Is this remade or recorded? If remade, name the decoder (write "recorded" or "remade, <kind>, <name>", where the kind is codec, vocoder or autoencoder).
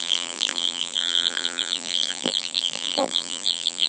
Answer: remade, vocoder, BigVGAN v2